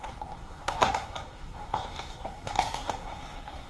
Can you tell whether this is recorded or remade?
remade